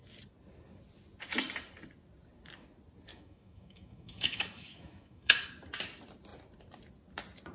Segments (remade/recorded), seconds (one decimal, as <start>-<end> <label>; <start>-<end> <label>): 0.0-3.1 recorded; 3.1-5.5 remade; 5.5-7.5 recorded